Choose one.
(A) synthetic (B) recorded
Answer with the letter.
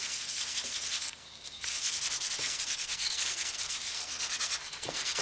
A